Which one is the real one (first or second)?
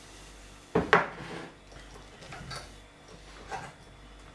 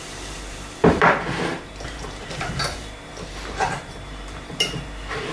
first